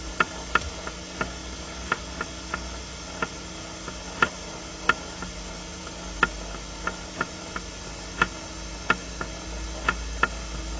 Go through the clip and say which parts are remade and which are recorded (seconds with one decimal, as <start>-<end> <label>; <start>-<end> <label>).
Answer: 0.0-10.8 recorded

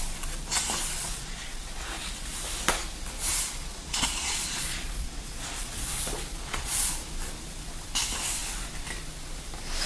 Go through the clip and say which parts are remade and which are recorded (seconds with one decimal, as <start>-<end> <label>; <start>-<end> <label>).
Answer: 0.0-1.0 recorded; 1.0-1.6 remade; 1.6-3.3 recorded; 3.3-6.9 remade; 6.9-9.9 recorded

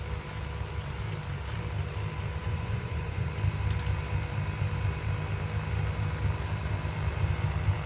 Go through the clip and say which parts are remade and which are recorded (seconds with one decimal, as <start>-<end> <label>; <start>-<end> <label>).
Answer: 0.0-2.4 recorded; 2.4-3.3 remade; 3.3-7.9 recorded

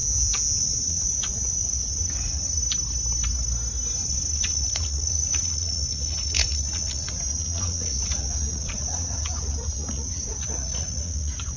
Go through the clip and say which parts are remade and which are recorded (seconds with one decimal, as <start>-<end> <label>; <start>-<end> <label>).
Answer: 0.0-0.6 recorded; 0.6-2.6 remade; 2.6-4.0 recorded; 4.0-11.6 remade